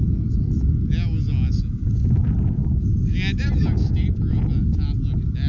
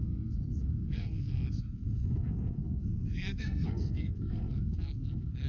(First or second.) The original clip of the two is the first